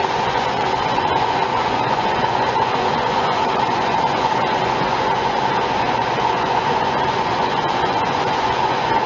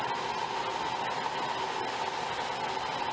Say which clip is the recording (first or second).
second